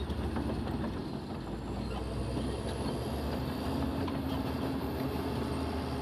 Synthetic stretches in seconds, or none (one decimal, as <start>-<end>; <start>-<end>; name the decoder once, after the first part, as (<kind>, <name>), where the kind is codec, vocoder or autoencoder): 3.9-5.5 (vocoder, BigVGAN v2)